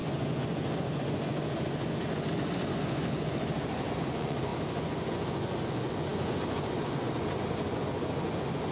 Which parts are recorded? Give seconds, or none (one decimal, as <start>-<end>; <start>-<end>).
none